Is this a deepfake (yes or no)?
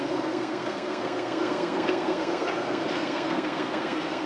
yes